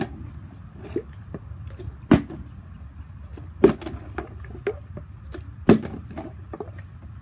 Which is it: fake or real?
real